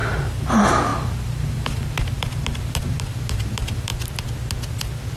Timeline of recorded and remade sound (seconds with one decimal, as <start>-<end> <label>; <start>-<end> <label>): 0.0-3.9 remade; 3.9-5.2 recorded